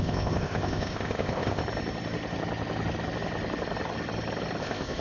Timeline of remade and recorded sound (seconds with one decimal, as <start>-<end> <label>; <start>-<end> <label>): 0.0-1.6 remade; 1.6-4.6 recorded; 4.6-5.0 remade